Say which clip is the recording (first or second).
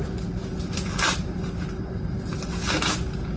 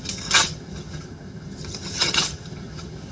first